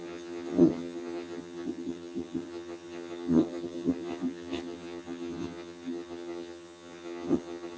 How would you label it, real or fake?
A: fake